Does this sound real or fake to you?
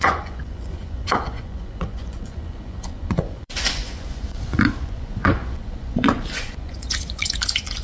fake